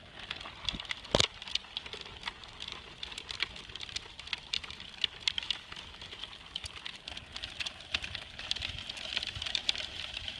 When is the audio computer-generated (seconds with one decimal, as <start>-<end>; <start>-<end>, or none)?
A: none